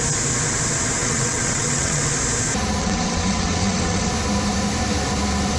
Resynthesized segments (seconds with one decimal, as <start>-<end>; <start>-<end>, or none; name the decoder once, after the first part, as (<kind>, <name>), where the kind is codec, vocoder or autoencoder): 1.0-2.0 (vocoder, WaveNeXt); 2.8-4.1